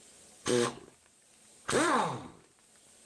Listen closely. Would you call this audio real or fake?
real